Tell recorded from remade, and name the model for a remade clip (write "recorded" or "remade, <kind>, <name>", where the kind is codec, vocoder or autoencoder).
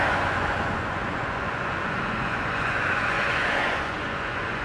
remade, vocoder, Vocos